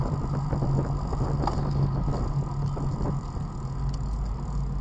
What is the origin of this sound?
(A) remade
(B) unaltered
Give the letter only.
B